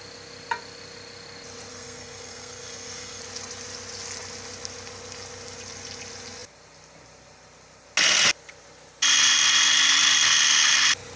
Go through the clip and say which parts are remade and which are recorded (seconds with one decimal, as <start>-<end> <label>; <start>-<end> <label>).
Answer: 0.0-1.7 recorded; 1.7-3.2 remade; 3.2-11.2 recorded